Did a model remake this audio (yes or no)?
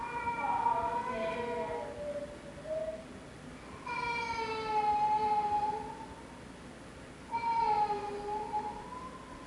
no